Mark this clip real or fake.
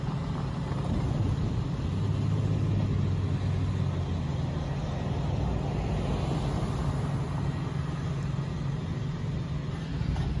real